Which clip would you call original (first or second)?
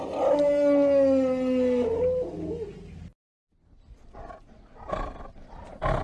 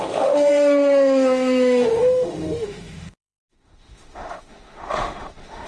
first